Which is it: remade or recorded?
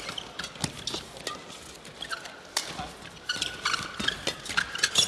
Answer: recorded